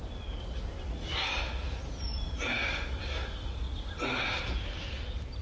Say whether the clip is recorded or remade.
recorded